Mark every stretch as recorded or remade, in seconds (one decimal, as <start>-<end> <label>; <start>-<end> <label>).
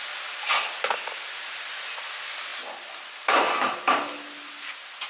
0.0-5.1 recorded